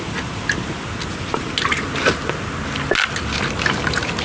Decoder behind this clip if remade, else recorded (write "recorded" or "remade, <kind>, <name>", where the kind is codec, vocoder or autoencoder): recorded